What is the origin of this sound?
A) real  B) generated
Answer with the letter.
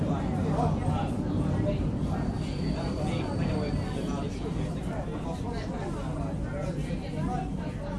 A